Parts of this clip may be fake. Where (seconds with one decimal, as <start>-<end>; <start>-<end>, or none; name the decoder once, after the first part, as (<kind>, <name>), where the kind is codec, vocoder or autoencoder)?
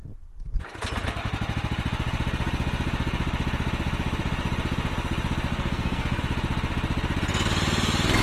5.5-6.2 (codec, SNAC)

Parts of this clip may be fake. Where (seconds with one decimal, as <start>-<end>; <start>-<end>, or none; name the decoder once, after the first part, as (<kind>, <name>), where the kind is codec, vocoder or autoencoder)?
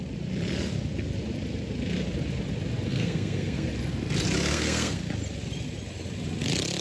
2.9-3.7 (codec, SNAC); 4.5-5.0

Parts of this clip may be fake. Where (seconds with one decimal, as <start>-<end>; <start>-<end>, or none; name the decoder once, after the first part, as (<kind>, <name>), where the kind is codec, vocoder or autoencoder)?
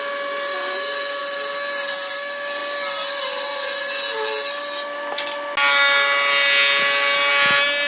none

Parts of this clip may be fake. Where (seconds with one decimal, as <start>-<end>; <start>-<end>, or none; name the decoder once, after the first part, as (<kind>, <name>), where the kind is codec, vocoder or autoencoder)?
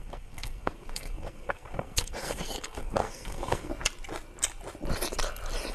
0.0-3.7 (codec, SNAC)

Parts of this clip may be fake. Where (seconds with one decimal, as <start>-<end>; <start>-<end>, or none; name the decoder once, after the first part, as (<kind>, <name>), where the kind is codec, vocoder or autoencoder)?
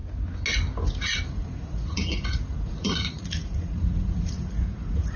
1.0-5.2 (vocoder, Vocos)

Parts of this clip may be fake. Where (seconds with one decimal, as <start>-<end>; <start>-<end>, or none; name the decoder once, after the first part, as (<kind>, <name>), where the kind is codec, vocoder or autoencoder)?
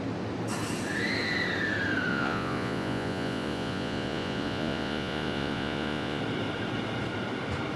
2.1-6.2 (vocoder, Vocos)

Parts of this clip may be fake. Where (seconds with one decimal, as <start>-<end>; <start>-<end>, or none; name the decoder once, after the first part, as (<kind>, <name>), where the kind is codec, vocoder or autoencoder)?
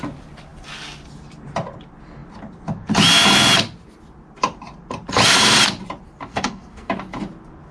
6.3-6.9 (codec, SNAC)